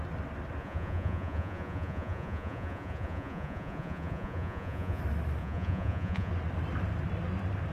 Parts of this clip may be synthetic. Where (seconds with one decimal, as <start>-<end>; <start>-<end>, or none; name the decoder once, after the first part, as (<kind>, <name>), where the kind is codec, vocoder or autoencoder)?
0.6-5.0 (vocoder, Vocos); 5.4-6.3